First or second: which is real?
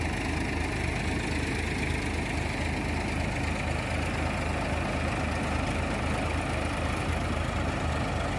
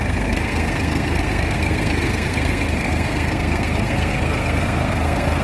first